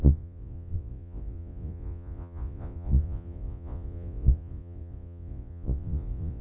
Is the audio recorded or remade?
remade